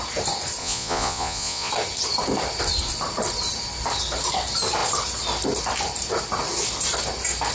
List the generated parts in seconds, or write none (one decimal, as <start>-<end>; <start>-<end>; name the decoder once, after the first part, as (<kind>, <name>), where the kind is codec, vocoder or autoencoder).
0.6-1.7 (vocoder, Vocos)